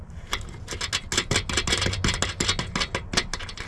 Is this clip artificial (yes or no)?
no